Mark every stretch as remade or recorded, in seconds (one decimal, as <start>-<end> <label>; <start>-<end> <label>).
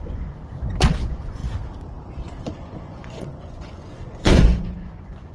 0.0-0.4 remade; 0.4-1.0 recorded; 1.0-1.4 remade; 1.4-2.4 recorded; 2.4-5.3 remade